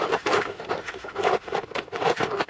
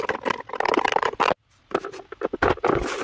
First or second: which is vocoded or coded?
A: first